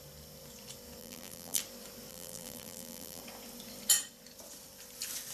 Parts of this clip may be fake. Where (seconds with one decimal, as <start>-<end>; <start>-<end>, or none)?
1.0-1.6; 2.1-3.2